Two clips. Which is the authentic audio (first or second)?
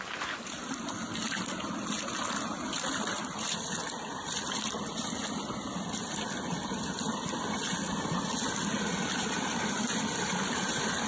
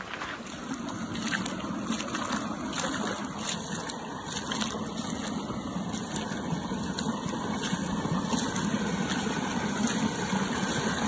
second